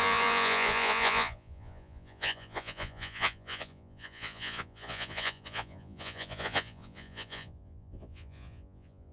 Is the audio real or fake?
fake